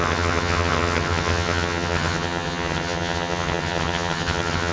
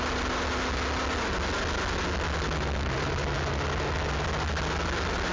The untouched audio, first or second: second